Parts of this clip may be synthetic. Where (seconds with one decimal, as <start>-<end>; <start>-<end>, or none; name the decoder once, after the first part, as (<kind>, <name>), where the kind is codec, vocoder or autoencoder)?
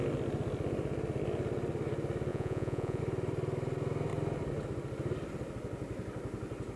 2.3-3.0 (vocoder, Vocos)